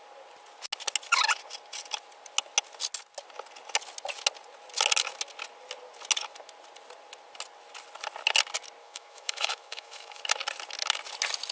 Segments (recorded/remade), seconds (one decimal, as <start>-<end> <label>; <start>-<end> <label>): 0.0-8.8 recorded; 8.8-10.2 remade; 10.2-11.5 recorded